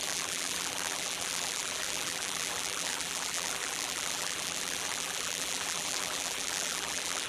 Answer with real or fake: fake